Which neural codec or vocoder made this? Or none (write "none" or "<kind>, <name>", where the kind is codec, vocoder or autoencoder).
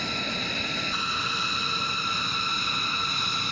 none